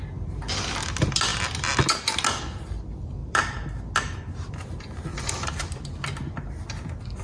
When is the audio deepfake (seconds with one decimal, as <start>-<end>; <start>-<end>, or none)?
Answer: none